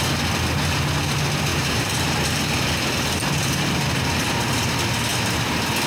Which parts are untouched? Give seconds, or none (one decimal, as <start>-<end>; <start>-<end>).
0.0-1.5; 4.3-5.1